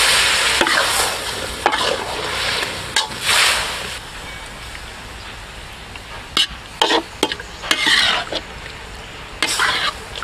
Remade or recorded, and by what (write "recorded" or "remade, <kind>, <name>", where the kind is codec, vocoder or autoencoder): recorded